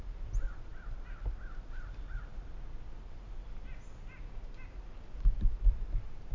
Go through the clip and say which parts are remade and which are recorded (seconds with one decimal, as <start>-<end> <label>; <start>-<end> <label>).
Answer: 0.0-6.3 recorded